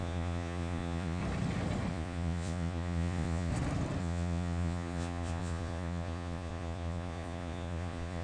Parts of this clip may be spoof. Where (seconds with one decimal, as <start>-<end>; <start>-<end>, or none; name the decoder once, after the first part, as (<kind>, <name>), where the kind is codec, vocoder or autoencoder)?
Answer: 0.0-1.2 (vocoder, Vocos); 1.9-3.5; 4.0-8.2